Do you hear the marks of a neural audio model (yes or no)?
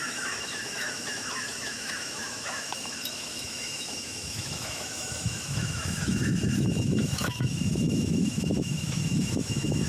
yes